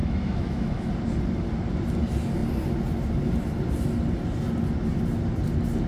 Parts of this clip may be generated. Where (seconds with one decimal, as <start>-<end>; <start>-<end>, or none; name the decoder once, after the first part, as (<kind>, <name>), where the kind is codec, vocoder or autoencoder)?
0.0-0.9 (autoencoder, DAC-VAE)